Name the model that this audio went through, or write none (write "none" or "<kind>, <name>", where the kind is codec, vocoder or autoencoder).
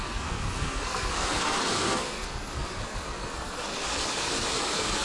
codec, SNAC